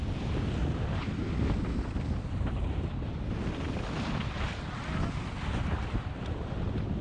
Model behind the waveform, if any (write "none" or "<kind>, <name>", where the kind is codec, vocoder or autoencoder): vocoder, BigVGAN v2